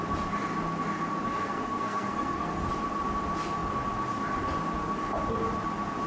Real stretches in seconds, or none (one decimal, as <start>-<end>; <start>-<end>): 0.0-1.3; 2.7-6.1